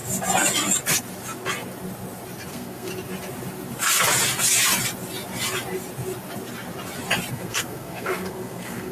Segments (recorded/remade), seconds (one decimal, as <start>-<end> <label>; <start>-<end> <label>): 0.0-2.5 recorded; 2.5-2.9 remade; 2.9-7.3 recorded; 7.3-8.9 remade